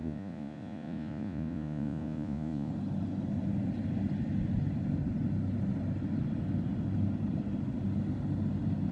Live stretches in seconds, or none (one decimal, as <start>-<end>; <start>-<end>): 2.7-8.9